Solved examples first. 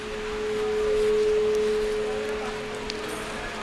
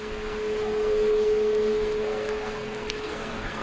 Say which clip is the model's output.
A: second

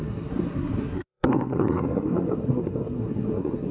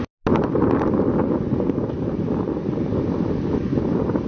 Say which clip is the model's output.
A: first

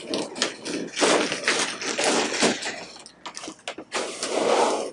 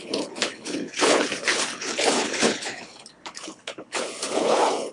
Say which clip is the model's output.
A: second